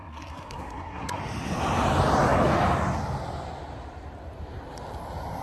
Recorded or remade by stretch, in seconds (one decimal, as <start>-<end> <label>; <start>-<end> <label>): 0.0-1.2 remade; 1.2-5.4 recorded